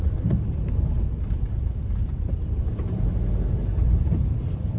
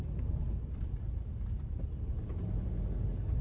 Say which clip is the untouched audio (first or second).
second